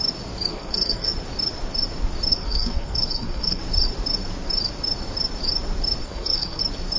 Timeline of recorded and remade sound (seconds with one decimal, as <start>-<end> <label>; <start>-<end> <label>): 0.0-0.5 recorded; 0.5-1.1 remade; 1.1-2.3 recorded; 2.3-3.6 remade; 3.6-6.0 recorded; 6.0-6.6 remade; 6.6-7.0 recorded